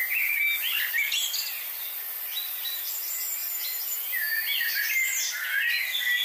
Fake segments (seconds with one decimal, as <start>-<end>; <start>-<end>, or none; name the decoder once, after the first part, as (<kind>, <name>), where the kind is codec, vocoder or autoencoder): none